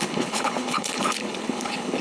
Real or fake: fake